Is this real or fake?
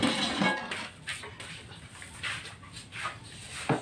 real